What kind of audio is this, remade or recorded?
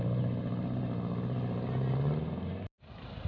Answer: recorded